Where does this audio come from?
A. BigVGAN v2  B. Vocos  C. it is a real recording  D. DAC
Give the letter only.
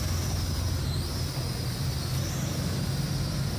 C